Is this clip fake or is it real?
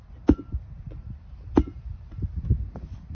real